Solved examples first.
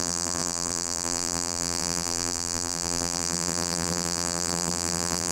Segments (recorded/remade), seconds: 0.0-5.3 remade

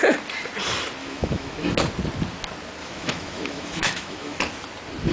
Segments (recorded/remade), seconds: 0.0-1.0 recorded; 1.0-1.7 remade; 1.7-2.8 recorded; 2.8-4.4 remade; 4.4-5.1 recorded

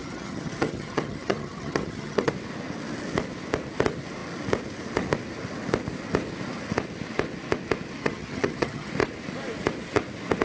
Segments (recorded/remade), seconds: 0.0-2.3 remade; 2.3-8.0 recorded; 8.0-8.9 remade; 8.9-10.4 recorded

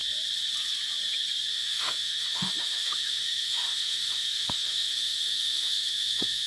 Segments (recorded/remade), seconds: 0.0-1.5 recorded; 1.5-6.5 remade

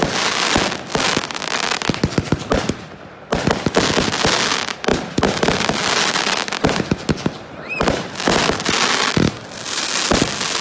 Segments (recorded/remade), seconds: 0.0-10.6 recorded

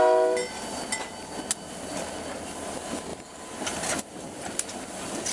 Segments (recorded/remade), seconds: 0.0-5.3 recorded